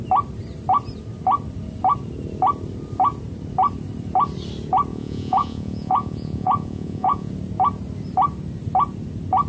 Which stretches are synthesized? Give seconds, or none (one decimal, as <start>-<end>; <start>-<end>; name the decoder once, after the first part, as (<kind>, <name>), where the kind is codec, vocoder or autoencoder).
4.9-7.3 (vocoder, Vocos)